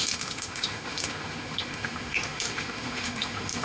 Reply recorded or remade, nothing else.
remade